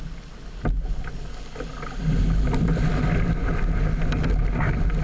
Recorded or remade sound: recorded